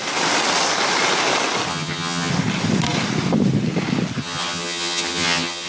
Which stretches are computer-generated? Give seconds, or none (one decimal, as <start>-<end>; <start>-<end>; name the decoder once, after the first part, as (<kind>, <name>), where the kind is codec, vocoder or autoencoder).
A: 1.7-2.3 (vocoder, HiFi-GAN); 4.2-5.7